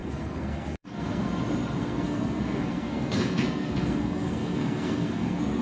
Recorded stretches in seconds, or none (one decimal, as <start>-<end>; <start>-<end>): 1.3-1.8